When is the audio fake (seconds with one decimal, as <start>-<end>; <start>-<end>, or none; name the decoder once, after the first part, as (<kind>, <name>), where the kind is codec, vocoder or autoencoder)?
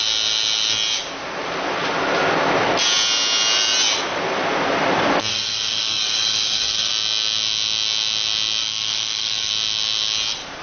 5.3-6.9 (codec, DAC); 8.6-9.5